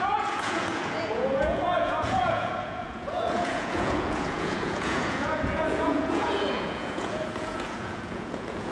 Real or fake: fake